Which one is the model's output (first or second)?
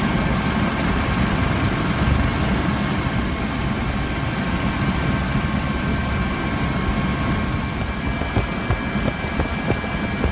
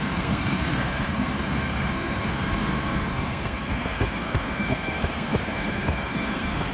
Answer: second